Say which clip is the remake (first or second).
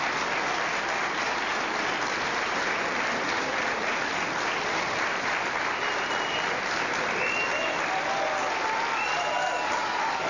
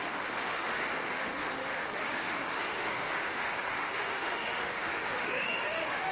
second